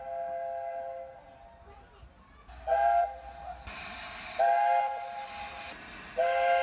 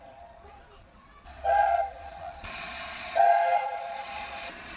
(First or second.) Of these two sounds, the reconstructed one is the second